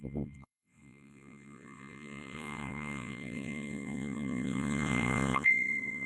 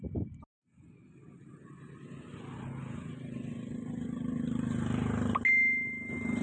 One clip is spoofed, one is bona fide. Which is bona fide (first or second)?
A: second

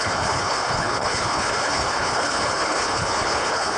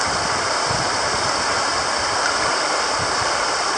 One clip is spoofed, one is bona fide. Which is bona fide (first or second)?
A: second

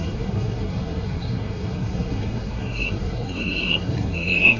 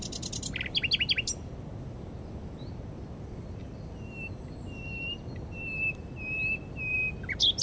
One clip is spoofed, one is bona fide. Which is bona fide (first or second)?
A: second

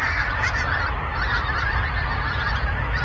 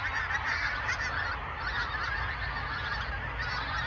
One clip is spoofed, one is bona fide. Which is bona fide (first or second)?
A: second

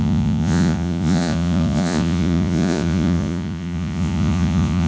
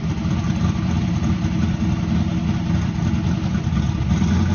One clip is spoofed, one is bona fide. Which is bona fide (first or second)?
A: second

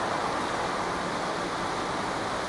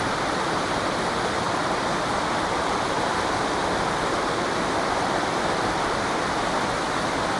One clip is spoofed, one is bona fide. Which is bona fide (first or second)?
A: first